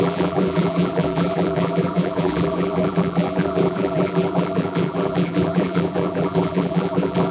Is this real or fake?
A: fake